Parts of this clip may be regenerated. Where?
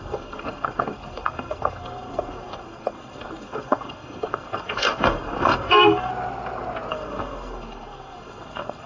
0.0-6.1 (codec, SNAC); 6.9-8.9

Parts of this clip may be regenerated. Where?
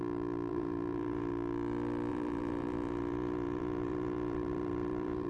0.5-1.3 (vocoder, BigVGAN v2); 2.1-5.3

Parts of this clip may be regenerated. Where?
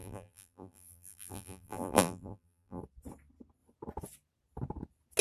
0.0-2.8 (vocoder, BigVGAN v2)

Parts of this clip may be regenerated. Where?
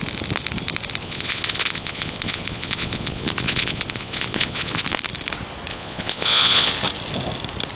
1.0-4.8 (vocoder, Vocos); 5.7-6.7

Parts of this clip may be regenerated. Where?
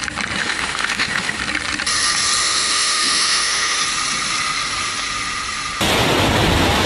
0.4-1.4 (autoencoder, DAC-VAE); 2.4-3.8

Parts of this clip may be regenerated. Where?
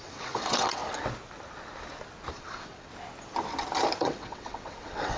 0.0-0.8 (vocoder, WaveNeXt); 2.3-2.9; 4.0-5.2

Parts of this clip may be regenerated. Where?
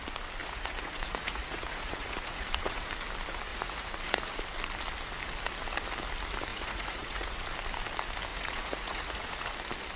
0.4-2.9 (vocoder, Vocos); 3.5-4.4; 6.5-7.4; 8.3-9.5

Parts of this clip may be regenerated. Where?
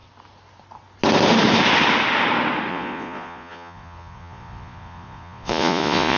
2.7-6.2 (vocoder, Vocos)